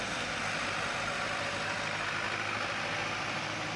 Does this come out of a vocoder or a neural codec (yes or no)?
no